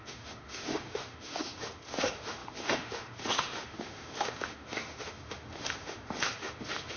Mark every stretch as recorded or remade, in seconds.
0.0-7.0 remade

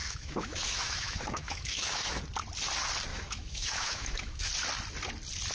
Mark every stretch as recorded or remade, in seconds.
0.0-2.2 remade; 2.2-3.1 recorded; 3.1-4.5 remade; 4.5-5.5 recorded

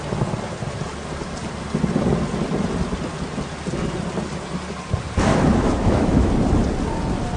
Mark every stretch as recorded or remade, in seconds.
0.0-5.3 recorded; 5.3-6.3 remade; 6.3-7.4 recorded

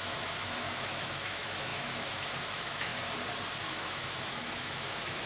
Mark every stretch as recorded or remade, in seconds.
0.0-2.9 remade; 2.9-3.6 recorded; 3.6-5.3 remade

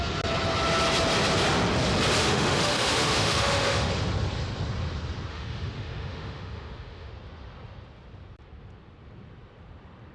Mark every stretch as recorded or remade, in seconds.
0.0-2.2 recorded; 2.2-3.9 remade; 3.9-5.3 recorded; 5.3-7.1 remade; 7.1-10.1 recorded

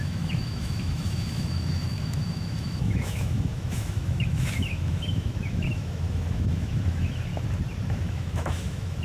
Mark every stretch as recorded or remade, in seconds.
0.0-7.3 remade; 7.3-7.9 recorded; 7.9-9.0 remade